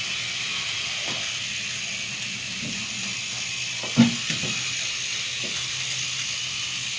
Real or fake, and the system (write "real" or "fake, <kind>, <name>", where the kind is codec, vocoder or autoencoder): real